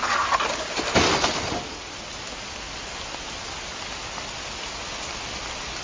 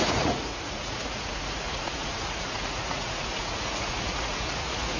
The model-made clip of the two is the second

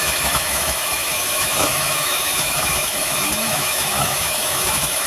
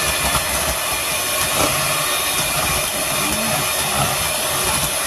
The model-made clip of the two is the first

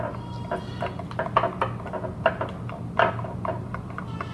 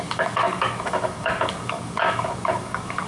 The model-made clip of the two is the second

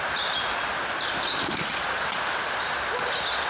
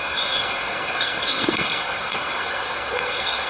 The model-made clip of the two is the second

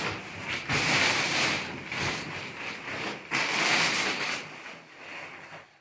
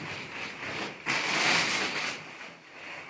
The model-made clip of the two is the second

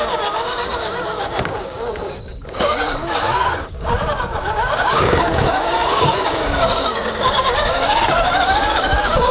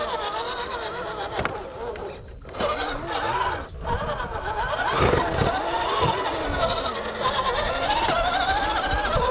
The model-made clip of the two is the first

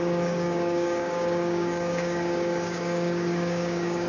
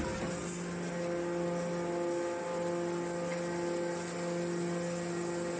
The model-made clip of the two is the first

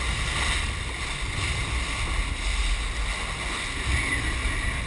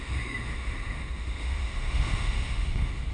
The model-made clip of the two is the second